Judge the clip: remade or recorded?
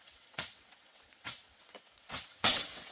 remade